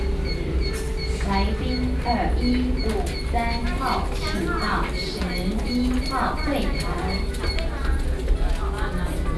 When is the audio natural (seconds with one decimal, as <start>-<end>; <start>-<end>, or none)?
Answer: 0.0-9.4